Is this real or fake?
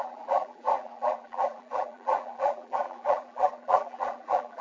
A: fake